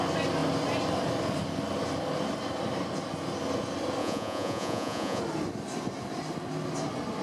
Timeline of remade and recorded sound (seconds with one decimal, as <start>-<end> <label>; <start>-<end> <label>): 0.0-4.0 recorded; 4.0-5.2 remade; 5.2-7.2 recorded